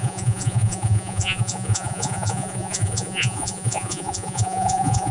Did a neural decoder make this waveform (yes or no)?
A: yes